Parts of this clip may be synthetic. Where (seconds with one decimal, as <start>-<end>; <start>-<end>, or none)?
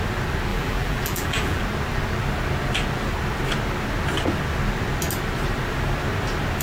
0.5-1.6